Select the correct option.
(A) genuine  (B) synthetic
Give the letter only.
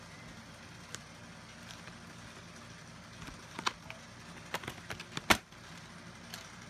A